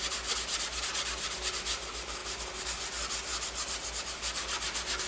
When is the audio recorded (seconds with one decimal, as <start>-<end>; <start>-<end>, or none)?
0.0-5.1